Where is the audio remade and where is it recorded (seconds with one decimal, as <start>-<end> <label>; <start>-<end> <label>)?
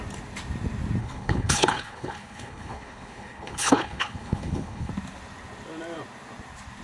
0.0-1.0 recorded; 1.0-4.9 remade; 4.9-6.8 recorded